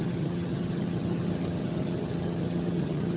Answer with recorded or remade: remade